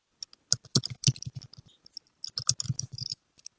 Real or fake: real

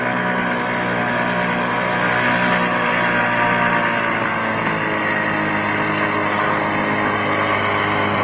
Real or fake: real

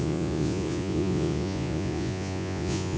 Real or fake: fake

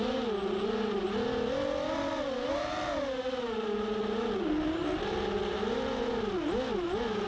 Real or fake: real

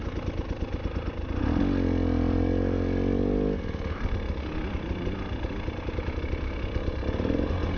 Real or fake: real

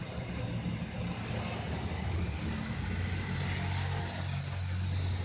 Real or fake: real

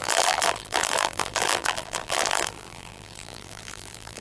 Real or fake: fake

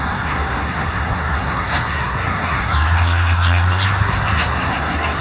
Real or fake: fake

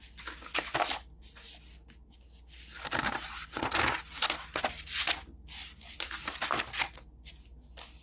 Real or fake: real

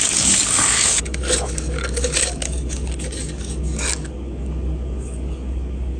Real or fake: fake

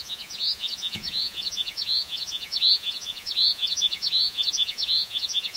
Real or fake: fake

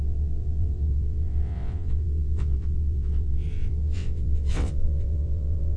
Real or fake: fake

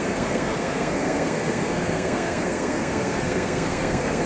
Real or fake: fake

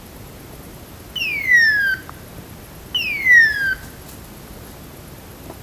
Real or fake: real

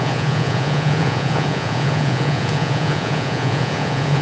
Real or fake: fake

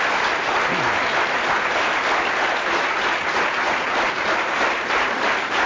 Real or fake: real